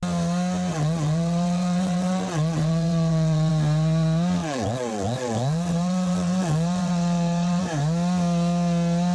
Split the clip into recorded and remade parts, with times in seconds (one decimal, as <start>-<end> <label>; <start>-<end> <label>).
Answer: 0.0-0.7 recorded; 0.7-3.5 remade; 3.5-4.4 recorded; 4.4-7.6 remade; 7.6-9.1 recorded